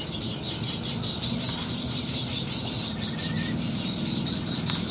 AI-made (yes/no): no